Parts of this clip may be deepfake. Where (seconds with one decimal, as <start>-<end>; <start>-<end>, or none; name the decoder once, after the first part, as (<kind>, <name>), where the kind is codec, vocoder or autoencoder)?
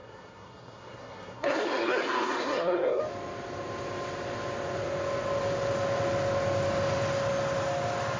0.0-3.0 (codec, SNAC)